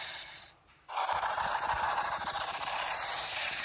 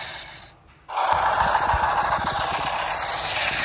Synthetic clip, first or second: first